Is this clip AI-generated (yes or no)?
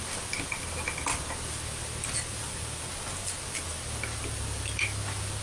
no